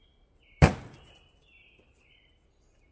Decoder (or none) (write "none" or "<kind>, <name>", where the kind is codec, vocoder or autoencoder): none